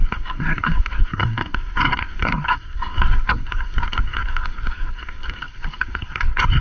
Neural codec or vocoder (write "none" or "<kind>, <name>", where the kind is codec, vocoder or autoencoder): codec, SNAC